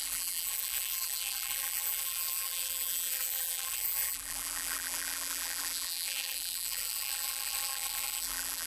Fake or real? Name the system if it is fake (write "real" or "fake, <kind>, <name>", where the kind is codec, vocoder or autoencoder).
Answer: fake, vocoder, BigVGAN v2